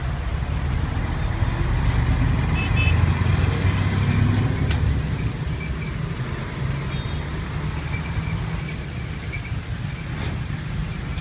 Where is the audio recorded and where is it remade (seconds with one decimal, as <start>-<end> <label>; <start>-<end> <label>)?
0.0-11.2 recorded